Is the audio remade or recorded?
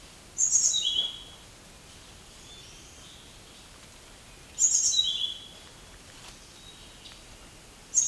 recorded